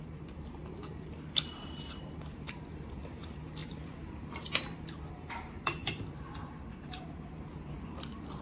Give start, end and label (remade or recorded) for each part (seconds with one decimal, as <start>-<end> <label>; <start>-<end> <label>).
0.0-8.4 remade